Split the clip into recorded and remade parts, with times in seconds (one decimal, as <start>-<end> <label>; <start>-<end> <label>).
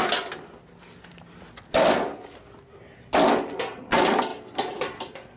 0.0-5.4 recorded